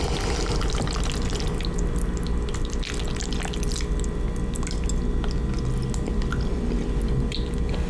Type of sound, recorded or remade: recorded